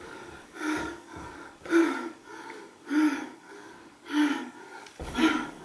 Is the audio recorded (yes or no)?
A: no